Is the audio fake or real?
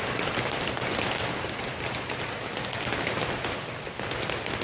real